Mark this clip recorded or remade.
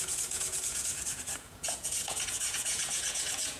remade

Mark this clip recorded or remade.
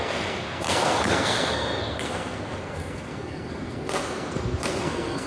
remade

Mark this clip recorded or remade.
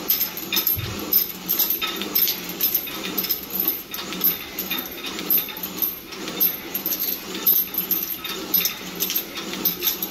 recorded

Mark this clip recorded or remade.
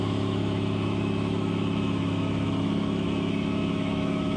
remade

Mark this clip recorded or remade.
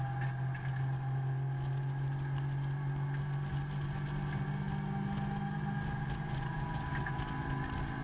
recorded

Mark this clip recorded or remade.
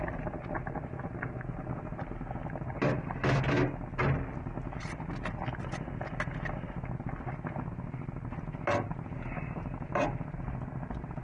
recorded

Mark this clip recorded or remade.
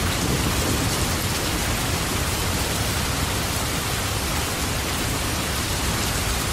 recorded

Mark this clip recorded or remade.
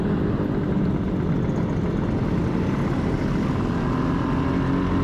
recorded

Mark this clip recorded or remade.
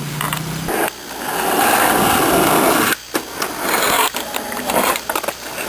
recorded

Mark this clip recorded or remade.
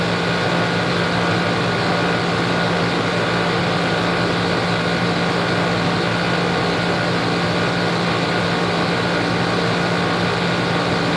recorded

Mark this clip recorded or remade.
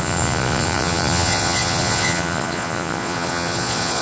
remade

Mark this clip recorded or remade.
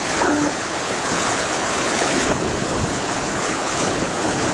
remade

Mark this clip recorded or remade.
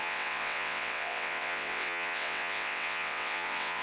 remade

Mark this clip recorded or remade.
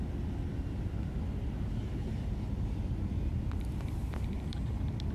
recorded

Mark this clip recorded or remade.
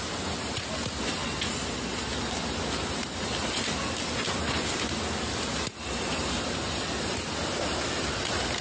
recorded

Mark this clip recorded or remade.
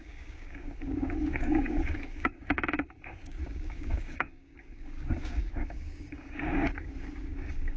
remade